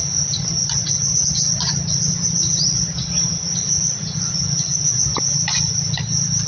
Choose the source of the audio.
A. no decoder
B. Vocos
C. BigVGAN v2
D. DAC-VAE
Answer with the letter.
C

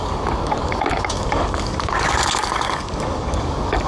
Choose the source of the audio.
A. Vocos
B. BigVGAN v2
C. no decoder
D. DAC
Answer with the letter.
D